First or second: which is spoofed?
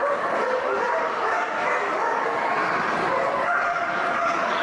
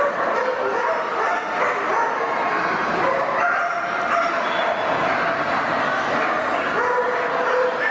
first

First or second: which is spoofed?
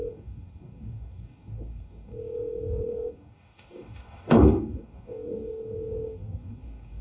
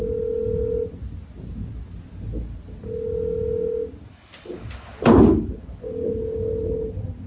first